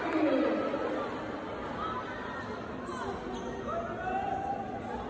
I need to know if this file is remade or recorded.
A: recorded